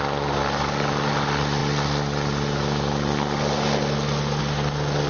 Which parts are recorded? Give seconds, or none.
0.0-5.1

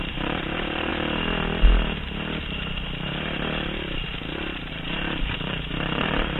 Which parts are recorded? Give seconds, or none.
0.9-4.7

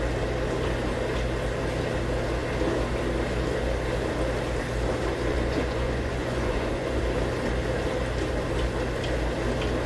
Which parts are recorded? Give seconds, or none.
0.0-5.3; 7.0-9.9

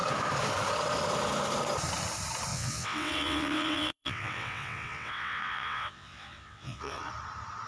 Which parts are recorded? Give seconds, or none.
0.0-2.5; 7.1-7.7